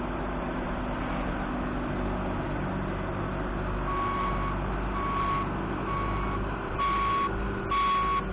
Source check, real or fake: real